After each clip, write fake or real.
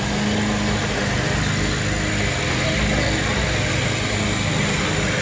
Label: real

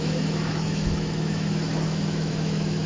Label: fake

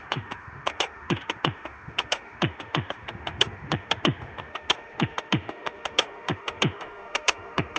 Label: fake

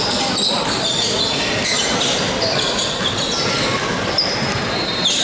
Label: real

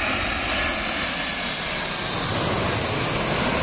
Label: real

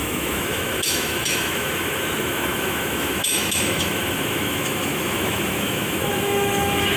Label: fake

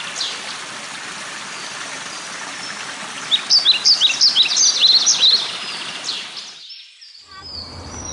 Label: real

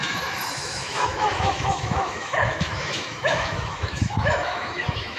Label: fake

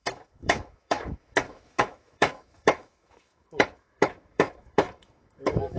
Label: fake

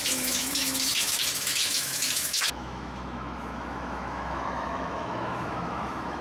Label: fake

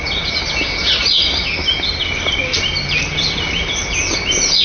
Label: real